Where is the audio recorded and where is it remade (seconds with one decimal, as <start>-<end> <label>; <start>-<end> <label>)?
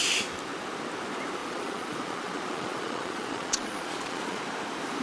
0.0-1.4 recorded; 1.4-4.4 remade; 4.4-5.0 recorded